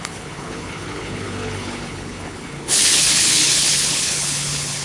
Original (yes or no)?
no